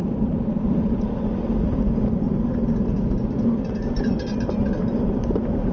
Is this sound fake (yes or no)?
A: no